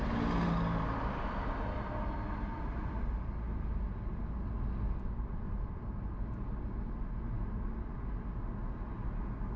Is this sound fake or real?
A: real